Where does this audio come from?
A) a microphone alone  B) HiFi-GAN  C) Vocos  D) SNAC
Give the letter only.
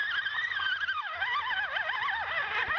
A